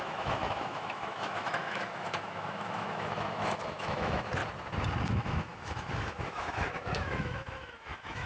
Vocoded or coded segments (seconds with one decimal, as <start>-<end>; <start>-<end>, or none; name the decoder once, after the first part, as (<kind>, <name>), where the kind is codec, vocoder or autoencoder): 0.0-4.4 (autoencoder, DAC-VAE); 5.1-8.3

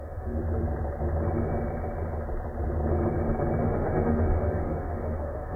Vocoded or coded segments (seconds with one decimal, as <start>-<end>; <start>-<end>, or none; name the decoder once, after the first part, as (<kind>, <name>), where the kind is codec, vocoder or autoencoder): 0.0-0.4 (autoencoder, DAC-VAE); 3.6-5.6